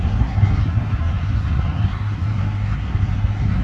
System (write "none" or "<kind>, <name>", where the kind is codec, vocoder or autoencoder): codec, SNAC